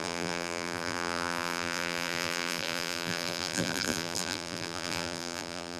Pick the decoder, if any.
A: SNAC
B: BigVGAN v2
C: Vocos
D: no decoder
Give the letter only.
B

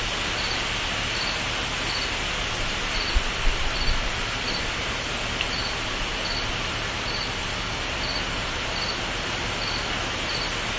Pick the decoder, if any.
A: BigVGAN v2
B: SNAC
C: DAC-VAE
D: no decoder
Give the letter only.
D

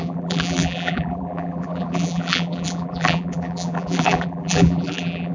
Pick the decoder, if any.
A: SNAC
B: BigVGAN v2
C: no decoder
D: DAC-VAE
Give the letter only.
B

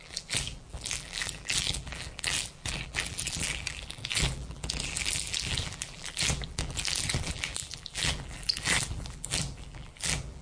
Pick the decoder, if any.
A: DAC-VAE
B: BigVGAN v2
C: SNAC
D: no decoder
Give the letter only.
B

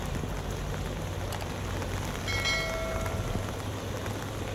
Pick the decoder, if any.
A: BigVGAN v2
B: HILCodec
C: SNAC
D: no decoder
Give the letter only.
D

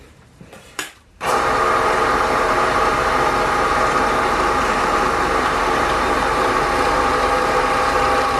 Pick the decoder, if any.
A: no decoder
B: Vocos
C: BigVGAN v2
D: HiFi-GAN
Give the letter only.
C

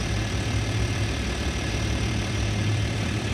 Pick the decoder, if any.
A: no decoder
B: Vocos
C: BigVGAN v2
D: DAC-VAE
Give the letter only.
C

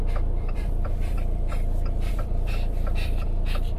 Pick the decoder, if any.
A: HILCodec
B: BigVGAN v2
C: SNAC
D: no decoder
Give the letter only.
B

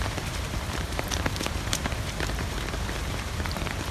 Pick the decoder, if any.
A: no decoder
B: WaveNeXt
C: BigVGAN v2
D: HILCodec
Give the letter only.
C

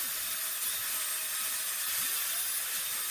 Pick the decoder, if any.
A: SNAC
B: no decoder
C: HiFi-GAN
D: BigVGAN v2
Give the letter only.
B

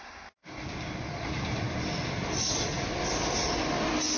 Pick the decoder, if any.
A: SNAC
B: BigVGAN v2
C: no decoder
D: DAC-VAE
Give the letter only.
C